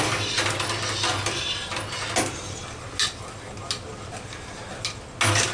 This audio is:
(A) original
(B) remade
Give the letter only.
A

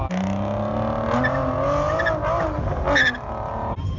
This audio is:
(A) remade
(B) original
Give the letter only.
B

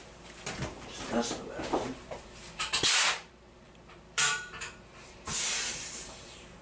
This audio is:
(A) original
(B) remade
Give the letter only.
B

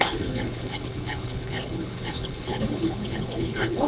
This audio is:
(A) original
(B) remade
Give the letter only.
B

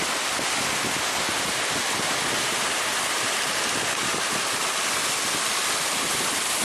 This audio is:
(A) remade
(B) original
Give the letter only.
B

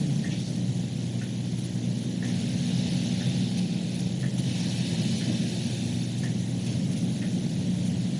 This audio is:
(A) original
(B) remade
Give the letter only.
A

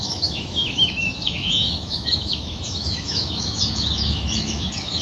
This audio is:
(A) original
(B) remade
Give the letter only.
B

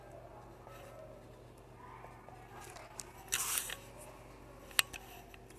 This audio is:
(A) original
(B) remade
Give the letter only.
A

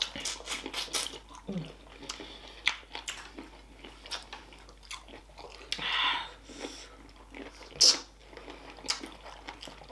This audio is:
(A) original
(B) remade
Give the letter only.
A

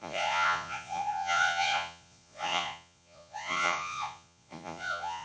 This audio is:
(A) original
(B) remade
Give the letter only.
B